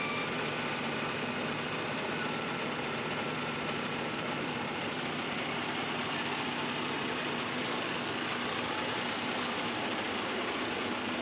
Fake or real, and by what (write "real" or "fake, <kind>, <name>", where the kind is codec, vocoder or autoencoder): fake, vocoder, BigVGAN v2